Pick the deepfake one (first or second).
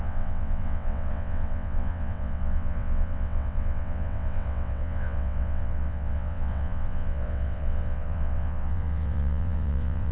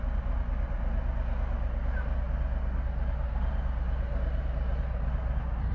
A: first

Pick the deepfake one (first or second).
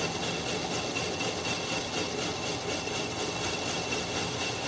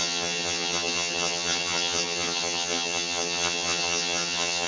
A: second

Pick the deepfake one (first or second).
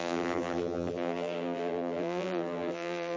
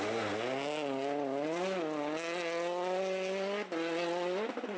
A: first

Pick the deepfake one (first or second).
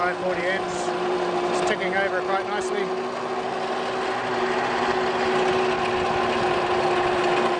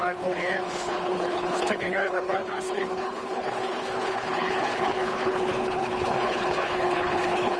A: second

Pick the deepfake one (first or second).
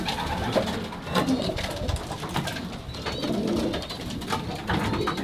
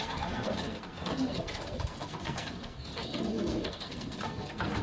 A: second